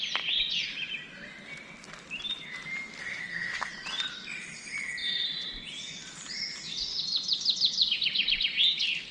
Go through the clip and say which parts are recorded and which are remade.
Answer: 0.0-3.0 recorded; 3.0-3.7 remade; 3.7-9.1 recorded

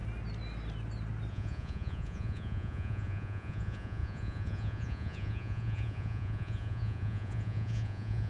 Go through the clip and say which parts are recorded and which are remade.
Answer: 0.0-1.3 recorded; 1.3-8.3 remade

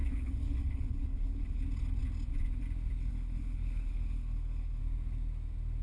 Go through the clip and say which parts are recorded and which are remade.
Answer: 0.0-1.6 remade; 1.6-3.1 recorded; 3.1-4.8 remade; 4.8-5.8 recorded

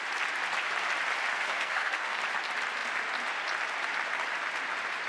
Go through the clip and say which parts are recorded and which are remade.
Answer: 0.0-1.3 recorded; 1.3-2.2 remade; 2.2-5.1 recorded

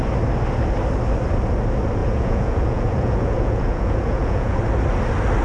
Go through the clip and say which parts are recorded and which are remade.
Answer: 0.0-2.0 recorded; 2.0-4.6 remade; 4.6-5.4 recorded